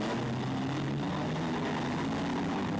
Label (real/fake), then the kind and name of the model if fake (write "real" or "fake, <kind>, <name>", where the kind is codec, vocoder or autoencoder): real